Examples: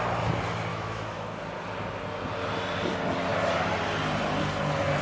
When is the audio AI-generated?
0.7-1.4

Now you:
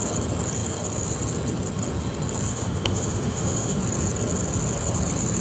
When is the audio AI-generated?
2.5-3.8